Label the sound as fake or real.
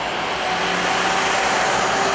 real